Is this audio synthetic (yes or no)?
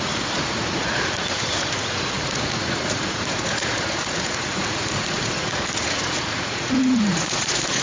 yes